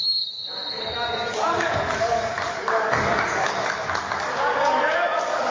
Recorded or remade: remade